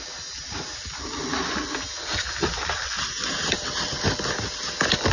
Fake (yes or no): no